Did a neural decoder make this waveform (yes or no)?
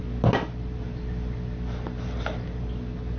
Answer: no